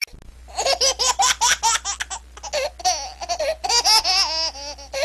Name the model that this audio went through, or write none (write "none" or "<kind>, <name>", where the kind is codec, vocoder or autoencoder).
none